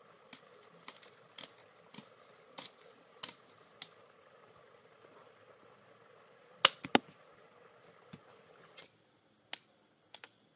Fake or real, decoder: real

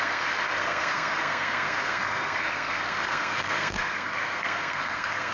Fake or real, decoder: fake, codec, SNAC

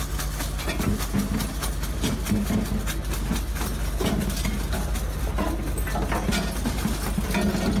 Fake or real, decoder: real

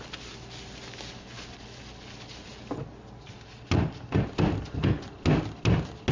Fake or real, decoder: real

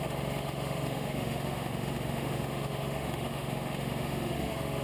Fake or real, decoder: fake, autoencoder, DAC-VAE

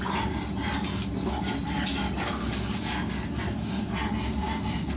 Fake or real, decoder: real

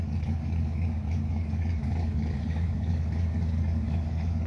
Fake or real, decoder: fake, codec, DAC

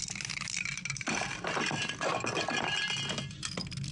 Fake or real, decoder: real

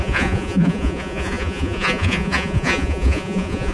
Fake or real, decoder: fake, vocoder, Vocos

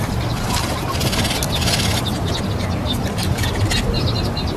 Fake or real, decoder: real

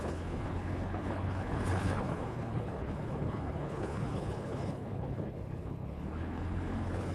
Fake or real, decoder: fake, codec, HILCodec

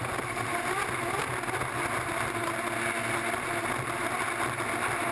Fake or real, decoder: real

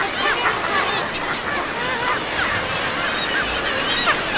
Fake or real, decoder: real